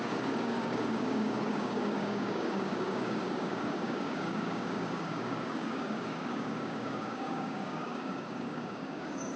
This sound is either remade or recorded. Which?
remade